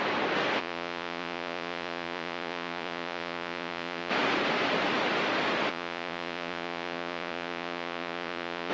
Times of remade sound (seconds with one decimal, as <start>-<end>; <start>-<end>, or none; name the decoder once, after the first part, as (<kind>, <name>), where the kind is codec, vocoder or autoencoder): 0.6-4.1 (vocoder, Vocos); 5.7-8.7